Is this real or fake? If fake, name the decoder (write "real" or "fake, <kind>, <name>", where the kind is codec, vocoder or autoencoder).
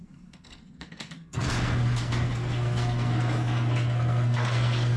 fake, codec, SNAC